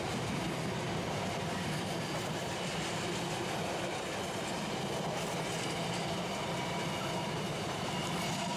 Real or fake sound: real